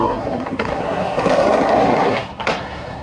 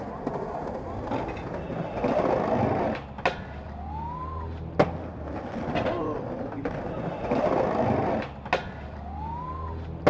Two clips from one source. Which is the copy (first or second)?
first